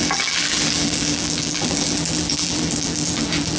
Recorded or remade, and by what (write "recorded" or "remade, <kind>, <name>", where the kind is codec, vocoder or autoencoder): remade, vocoder, BigVGAN v2